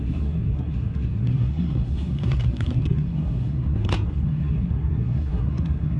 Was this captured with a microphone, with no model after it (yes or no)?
no